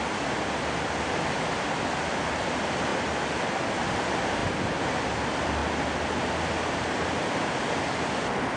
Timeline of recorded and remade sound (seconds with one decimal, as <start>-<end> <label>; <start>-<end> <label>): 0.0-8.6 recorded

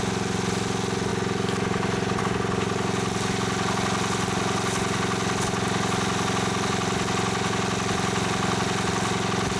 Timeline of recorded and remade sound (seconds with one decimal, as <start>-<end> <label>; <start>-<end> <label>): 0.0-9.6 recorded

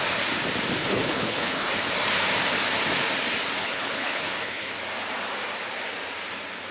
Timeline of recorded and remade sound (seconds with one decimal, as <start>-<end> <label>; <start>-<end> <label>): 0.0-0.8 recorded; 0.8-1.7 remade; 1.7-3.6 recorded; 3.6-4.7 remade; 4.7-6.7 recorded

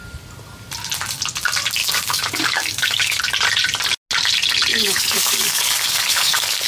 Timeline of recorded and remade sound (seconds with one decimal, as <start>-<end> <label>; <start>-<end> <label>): 0.0-1.8 recorded; 1.8-3.2 remade; 3.2-4.7 recorded; 4.7-6.7 remade

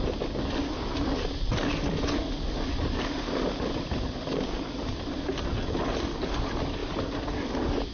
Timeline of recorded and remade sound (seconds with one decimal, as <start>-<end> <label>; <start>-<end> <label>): 0.0-7.9 recorded

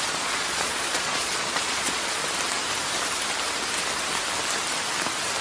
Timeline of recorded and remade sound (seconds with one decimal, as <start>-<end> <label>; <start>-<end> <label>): 0.0-2.2 remade; 2.2-5.4 recorded

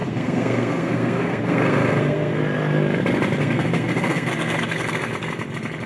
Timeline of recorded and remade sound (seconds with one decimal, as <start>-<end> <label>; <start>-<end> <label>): 0.0-2.4 remade; 2.4-3.4 recorded; 3.4-5.1 remade; 5.1-5.9 recorded

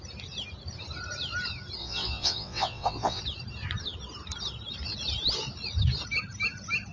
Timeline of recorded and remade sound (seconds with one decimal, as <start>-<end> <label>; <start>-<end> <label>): 0.0-1.8 recorded; 1.8-3.2 remade; 3.2-6.9 recorded